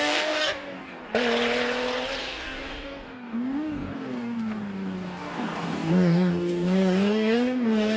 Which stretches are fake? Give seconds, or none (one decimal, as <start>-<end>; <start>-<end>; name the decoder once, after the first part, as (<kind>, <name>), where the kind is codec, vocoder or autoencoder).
0.0-1.0 (codec, DAC); 2.2-8.0